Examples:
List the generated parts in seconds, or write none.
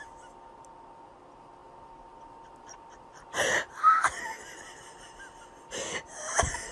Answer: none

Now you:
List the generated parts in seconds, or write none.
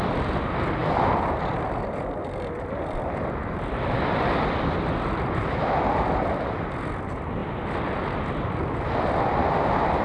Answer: 0.0-0.8; 1.4-7.4; 9.0-10.0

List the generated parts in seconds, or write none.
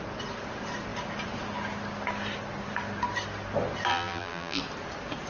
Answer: 3.9-4.6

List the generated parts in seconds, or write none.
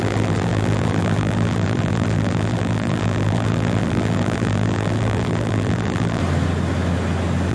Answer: 0.0-6.2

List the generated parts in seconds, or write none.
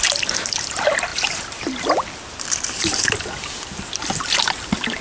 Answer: none